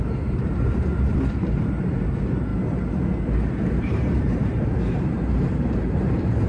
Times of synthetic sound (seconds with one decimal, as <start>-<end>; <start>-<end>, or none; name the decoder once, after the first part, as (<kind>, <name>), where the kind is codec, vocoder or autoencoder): 0.0-2.5 (vocoder, BigVGAN v2); 3.8-6.5